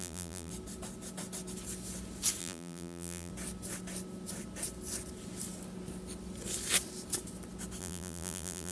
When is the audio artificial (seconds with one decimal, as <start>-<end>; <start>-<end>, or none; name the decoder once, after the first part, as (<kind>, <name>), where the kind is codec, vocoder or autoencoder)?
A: 0.0-0.5 (vocoder, BigVGAN v2); 2.4-3.3; 7.8-8.7